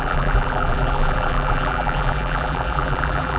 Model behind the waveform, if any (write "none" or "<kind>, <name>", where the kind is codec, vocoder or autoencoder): vocoder, BigVGAN v2